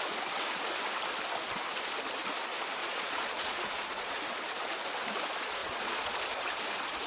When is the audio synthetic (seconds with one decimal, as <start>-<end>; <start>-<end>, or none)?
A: 2.8-4.2; 5.6-6.2